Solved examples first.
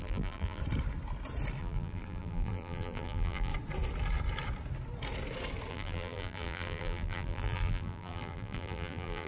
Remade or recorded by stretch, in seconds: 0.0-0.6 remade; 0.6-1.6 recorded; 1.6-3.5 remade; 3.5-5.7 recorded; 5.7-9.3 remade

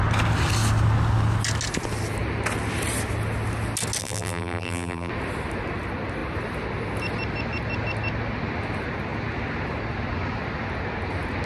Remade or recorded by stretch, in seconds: 0.0-4.0 recorded; 4.0-5.1 remade; 5.1-11.5 recorded

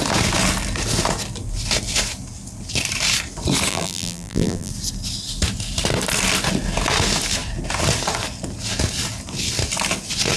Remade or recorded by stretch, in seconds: 0.0-3.7 recorded; 3.7-4.7 remade; 4.7-10.4 recorded